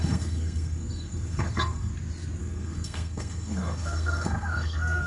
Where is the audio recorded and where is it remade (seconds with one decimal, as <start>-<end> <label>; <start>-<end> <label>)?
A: 0.0-1.9 remade; 1.9-2.4 recorded; 2.4-5.1 remade